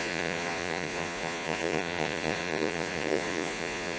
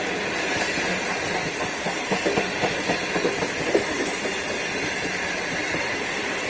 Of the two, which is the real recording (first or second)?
second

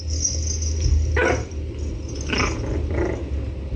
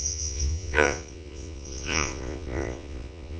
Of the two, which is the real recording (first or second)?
first